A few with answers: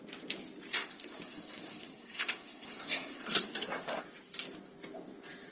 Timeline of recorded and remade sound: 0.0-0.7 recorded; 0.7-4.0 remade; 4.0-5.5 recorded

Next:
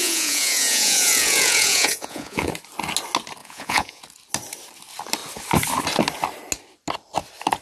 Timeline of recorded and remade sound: 0.0-2.5 remade; 2.5-3.4 recorded; 3.4-4.0 remade; 4.0-7.6 recorded

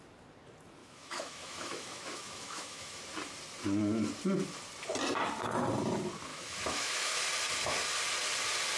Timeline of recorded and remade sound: 0.0-0.8 recorded; 0.8-3.0 remade; 3.0-6.3 recorded; 6.3-7.3 remade; 7.3-8.8 recorded

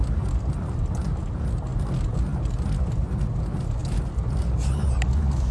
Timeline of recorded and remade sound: 0.0-5.5 recorded

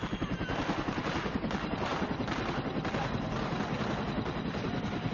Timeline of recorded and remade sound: 0.0-5.1 recorded

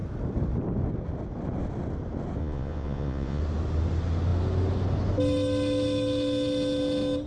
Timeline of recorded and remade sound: 0.0-2.4 recorded; 2.4-3.4 remade; 3.4-7.3 recorded